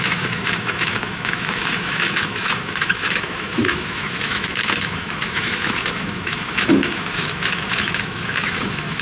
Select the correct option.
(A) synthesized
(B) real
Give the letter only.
A